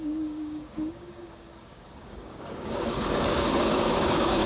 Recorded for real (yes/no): no